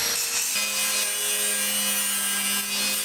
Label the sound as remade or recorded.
recorded